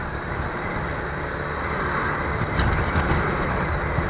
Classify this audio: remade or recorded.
recorded